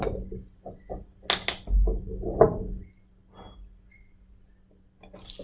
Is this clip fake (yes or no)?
no